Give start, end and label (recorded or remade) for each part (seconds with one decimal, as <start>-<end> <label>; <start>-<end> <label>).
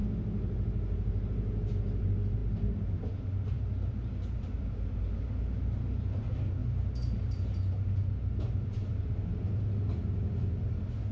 0.0-11.1 recorded